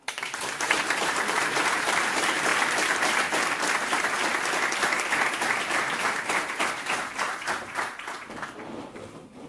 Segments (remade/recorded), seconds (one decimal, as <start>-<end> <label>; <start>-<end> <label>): 0.0-2.5 remade; 2.5-3.0 recorded; 3.0-4.2 remade; 4.2-6.0 recorded; 6.0-9.5 remade